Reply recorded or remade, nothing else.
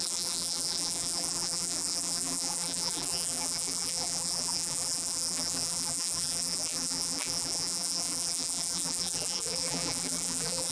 remade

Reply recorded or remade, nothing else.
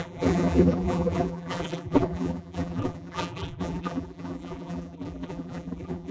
remade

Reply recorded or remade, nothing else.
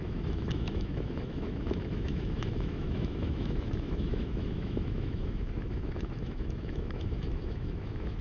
remade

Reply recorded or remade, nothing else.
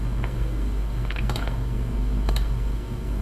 remade